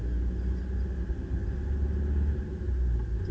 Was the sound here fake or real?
real